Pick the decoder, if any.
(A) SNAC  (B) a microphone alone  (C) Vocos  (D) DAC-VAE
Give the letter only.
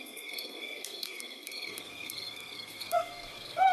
A